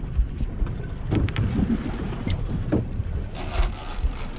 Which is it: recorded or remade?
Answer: remade